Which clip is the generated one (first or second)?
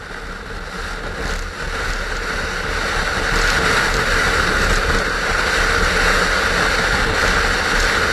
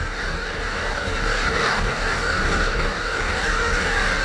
second